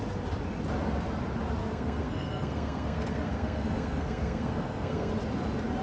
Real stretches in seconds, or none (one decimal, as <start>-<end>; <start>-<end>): 0.0-1.6; 5.1-5.8